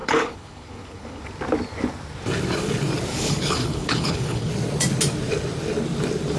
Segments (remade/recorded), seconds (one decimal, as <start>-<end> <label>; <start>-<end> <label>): 0.0-1.2 remade; 1.2-3.1 recorded; 3.1-4.5 remade; 4.5-6.4 recorded